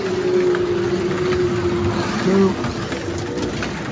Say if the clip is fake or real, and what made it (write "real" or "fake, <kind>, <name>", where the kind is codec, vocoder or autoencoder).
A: real